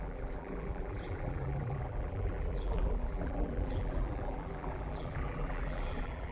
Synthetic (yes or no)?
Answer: yes